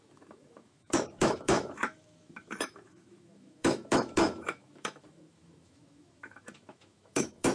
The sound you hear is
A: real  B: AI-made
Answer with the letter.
B